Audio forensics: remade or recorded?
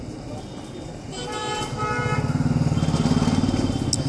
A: recorded